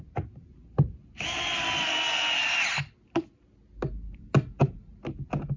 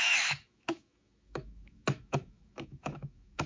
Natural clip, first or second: first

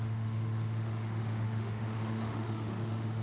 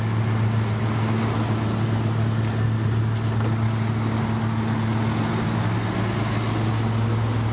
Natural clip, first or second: second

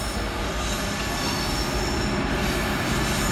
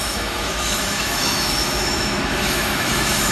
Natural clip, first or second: first